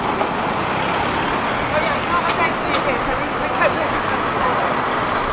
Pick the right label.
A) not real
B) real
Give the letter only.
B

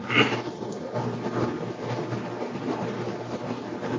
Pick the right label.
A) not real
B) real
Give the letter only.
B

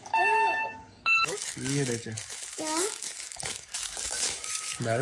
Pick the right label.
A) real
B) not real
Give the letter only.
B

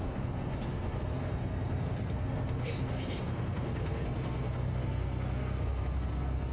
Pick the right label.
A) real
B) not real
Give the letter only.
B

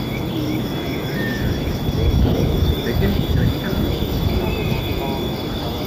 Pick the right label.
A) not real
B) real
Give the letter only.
A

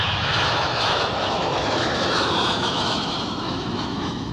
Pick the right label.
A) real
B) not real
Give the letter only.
B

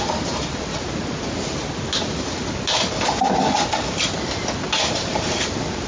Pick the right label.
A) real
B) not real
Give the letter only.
A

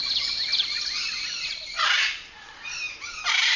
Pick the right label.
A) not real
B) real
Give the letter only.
B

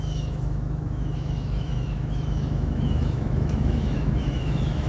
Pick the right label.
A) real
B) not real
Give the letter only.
B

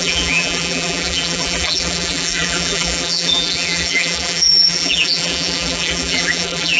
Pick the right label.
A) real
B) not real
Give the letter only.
B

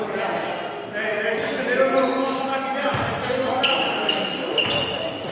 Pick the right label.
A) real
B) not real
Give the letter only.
A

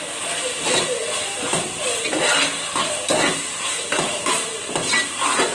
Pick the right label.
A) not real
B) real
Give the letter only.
B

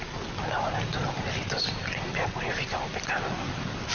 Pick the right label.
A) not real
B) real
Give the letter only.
B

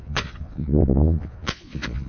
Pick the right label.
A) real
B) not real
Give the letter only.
B